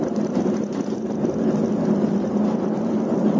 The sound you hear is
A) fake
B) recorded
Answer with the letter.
B